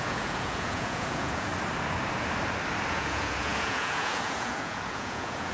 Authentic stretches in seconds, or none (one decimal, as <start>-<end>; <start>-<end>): 1.5-2.9